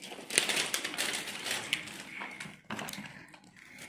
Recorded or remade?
recorded